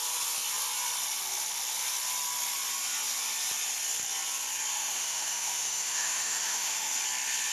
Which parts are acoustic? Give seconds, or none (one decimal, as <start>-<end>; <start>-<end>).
0.0-4.7; 6.9-7.5

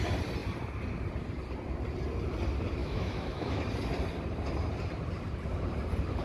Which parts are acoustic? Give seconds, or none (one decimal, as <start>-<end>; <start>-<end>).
0.0-2.8; 3.6-6.2

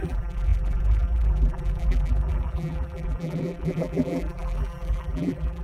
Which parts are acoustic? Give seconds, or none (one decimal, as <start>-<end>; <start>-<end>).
none

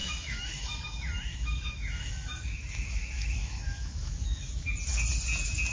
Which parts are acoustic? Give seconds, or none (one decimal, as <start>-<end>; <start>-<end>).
0.8-1.3; 4.7-5.7

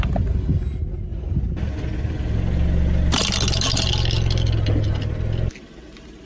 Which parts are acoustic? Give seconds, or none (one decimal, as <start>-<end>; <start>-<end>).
0.0-6.3

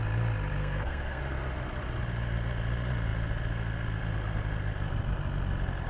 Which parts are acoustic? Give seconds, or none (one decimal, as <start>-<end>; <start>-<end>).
0.0-0.6; 1.2-5.9

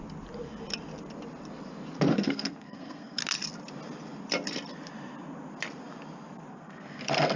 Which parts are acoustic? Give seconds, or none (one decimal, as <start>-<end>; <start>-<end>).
0.0-2.1; 3.2-6.5

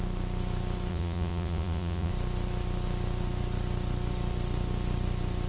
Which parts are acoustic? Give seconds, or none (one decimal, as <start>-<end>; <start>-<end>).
0.0-0.9; 2.1-5.5